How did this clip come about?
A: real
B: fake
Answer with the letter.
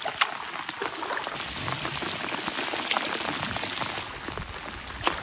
A